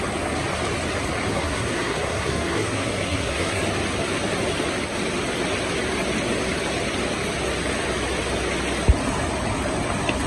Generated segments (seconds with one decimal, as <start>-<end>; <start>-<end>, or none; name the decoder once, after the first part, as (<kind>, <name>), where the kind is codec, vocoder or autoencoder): 1.3-3.6 (codec, SNAC)